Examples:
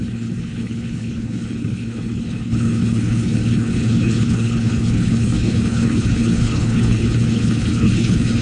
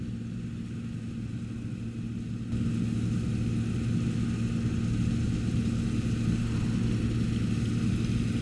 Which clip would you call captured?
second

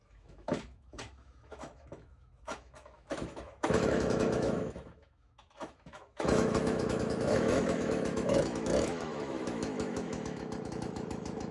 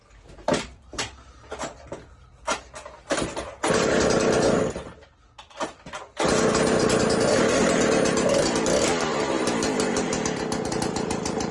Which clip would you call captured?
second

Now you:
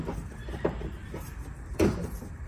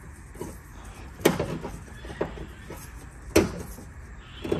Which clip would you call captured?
second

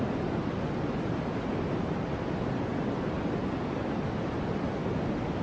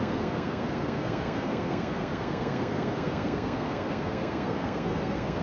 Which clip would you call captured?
first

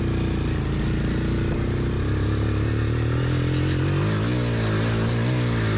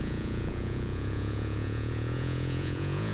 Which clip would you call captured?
first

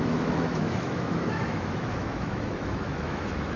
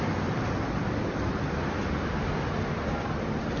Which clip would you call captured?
second